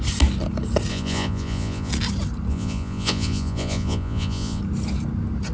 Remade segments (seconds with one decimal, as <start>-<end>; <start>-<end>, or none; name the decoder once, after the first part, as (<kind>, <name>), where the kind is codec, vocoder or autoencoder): 0.9-1.9 (vocoder, Vocos); 2.5-4.6